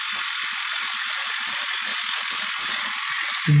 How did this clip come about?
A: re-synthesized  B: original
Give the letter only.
B